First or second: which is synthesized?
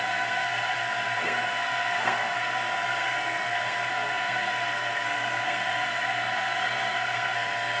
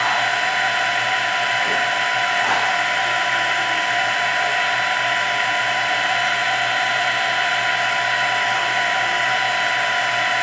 first